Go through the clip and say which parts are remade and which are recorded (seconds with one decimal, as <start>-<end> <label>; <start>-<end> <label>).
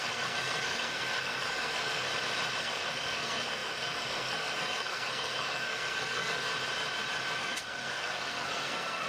0.0-2.1 remade; 2.1-2.6 recorded; 2.6-6.5 remade; 6.5-7.4 recorded; 7.4-9.1 remade